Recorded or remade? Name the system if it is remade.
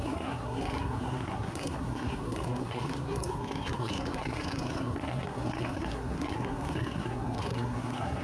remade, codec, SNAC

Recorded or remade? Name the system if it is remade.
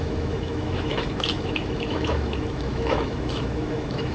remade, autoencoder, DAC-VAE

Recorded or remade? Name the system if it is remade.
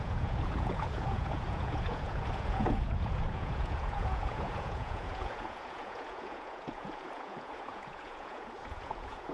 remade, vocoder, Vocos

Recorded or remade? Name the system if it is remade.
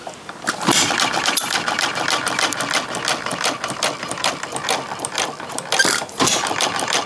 remade, vocoder, BigVGAN v2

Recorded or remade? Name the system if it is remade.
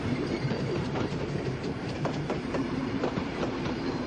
remade, vocoder, BigVGAN v2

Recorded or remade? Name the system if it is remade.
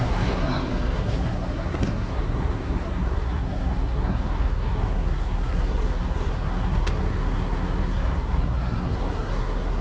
remade, codec, SNAC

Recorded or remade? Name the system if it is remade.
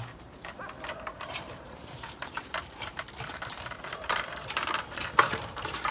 remade, vocoder, BigVGAN v2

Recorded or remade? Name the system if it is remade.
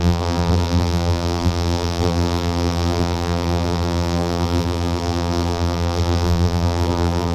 remade, vocoder, BigVGAN v2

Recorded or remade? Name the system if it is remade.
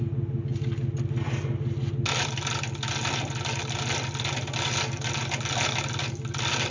recorded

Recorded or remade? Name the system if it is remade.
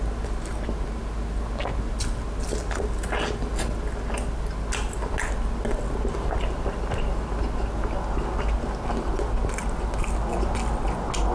recorded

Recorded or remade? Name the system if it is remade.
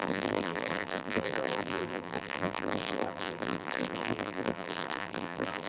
remade, vocoder, BigVGAN v2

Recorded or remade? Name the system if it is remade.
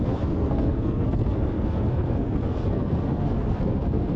remade, codec, SNAC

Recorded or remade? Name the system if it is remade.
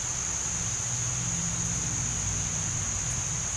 recorded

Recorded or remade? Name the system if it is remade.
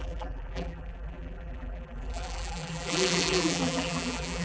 remade, vocoder, BigVGAN v2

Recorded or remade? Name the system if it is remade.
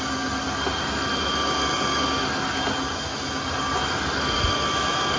recorded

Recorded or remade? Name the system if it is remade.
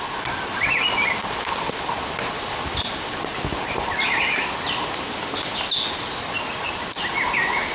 recorded